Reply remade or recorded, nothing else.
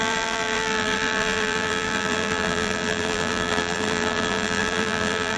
remade